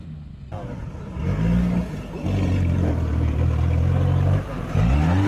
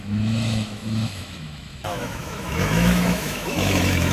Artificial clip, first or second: second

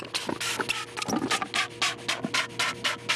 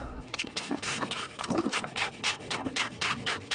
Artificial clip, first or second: second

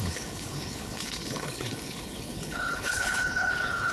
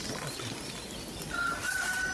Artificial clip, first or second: first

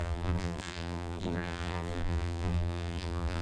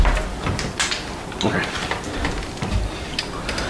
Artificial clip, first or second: first